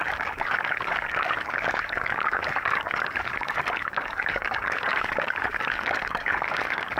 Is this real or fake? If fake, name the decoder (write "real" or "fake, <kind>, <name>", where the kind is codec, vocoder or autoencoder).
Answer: fake, codec, DAC